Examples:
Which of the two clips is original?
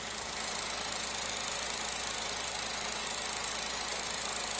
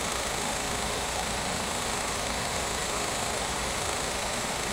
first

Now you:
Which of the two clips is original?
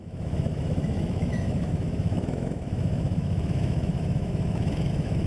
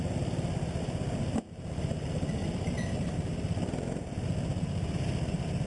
second